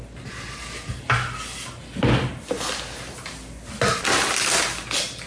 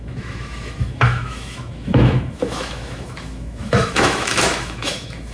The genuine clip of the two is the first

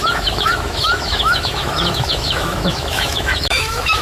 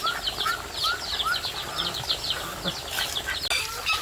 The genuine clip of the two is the second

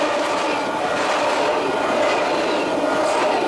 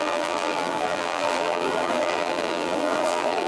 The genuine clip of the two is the first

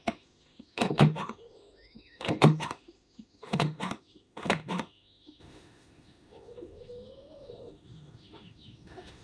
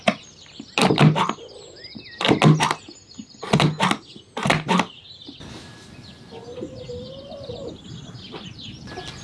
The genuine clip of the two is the second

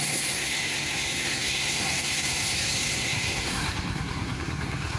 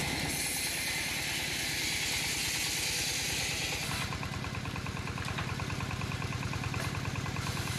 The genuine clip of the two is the second